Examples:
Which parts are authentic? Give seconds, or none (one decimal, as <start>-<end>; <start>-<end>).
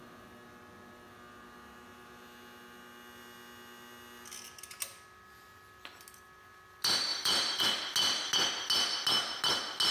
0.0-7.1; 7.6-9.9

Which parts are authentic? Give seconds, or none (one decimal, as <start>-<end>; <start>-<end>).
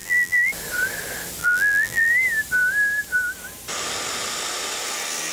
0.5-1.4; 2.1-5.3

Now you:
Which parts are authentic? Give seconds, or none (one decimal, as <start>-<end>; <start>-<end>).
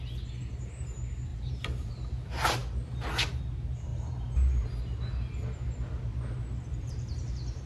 0.0-1.3; 1.9-6.7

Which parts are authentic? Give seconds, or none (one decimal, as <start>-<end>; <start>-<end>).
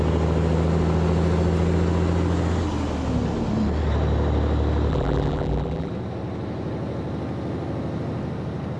0.0-4.9; 5.9-8.8